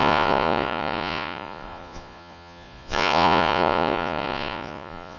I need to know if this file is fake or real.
fake